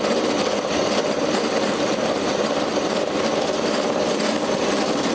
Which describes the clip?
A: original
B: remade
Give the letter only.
A